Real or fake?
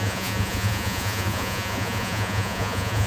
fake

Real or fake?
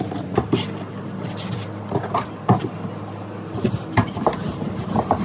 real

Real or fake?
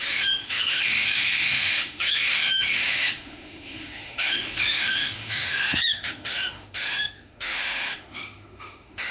fake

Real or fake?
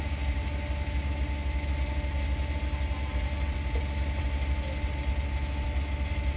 real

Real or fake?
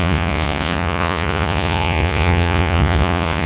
fake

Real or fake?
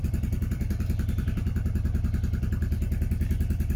fake